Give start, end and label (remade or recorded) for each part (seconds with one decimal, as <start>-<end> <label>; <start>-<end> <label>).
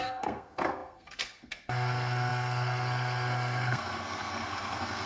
0.0-5.1 remade